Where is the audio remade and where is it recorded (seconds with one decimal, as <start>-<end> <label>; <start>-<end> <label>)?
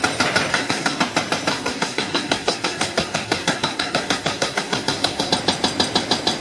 0.0-0.5 recorded; 0.5-1.0 remade; 1.0-1.5 recorded; 1.5-5.3 remade; 5.3-6.4 recorded